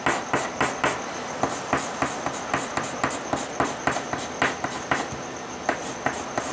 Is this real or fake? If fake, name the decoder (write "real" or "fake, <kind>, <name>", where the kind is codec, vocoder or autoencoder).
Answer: real